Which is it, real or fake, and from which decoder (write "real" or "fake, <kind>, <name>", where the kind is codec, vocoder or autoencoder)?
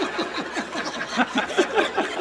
fake, vocoder, WaveNeXt